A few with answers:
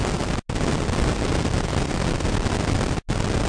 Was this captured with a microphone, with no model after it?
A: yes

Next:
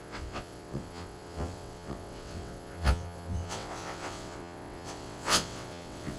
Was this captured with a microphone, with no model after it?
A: no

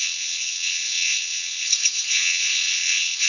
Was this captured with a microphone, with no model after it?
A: no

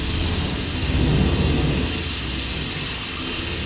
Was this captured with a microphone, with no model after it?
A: yes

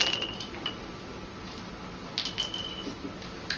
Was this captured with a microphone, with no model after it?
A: yes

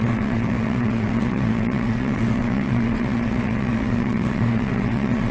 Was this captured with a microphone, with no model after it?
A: no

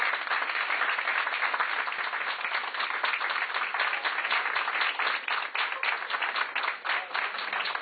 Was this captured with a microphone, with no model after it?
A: yes